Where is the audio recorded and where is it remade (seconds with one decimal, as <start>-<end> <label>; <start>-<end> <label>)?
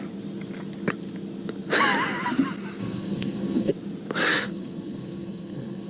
0.0-2.8 recorded; 2.8-3.7 remade; 3.7-4.3 recorded; 4.3-5.9 remade